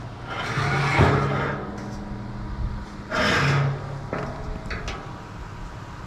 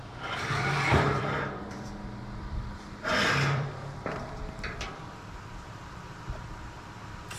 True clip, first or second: first